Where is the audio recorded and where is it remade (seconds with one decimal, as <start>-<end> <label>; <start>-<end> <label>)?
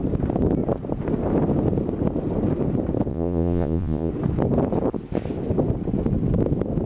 0.0-3.1 recorded; 3.1-4.1 remade; 4.1-6.9 recorded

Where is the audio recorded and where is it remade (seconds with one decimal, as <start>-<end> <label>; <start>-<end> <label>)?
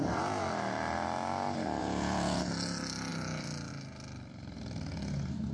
0.0-1.8 recorded; 1.8-2.4 remade; 2.4-5.5 recorded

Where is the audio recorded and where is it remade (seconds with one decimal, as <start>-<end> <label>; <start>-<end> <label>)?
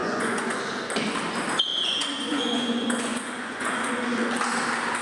0.0-0.6 remade; 0.6-1.7 recorded; 1.7-3.9 remade; 3.9-5.0 recorded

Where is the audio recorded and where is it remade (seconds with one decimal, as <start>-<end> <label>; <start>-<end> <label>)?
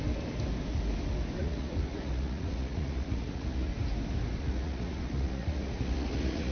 0.0-1.4 recorded; 1.4-3.7 remade; 3.7-4.4 recorded; 4.4-6.5 remade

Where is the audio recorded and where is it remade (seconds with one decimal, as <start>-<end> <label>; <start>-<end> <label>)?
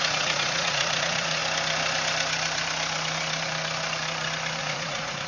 0.0-1.4 remade; 1.4-4.6 recorded; 4.6-5.3 remade